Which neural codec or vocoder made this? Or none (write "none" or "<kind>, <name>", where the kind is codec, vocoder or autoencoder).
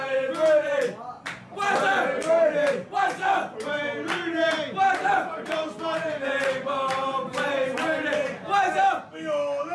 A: none